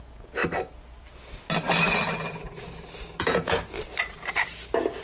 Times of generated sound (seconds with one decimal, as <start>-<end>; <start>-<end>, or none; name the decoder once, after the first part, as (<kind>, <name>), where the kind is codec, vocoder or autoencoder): 0.0-0.4 (vocoder, Vocos); 3.2-3.6